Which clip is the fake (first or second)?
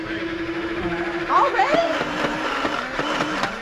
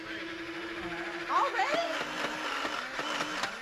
first